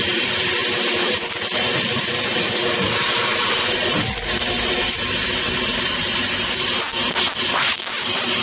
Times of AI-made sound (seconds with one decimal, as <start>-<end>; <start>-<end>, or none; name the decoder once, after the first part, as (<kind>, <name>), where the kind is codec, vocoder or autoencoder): none

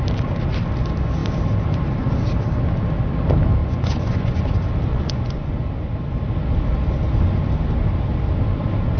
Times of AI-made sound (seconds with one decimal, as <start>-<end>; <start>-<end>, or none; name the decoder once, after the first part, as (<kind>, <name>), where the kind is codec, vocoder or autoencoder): 3.6-4.4 (vocoder, Vocos); 4.9-5.5

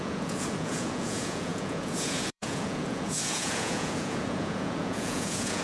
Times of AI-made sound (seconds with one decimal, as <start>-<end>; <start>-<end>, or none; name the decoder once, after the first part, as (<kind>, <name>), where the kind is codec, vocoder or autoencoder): 0.0-5.6 (vocoder, Vocos)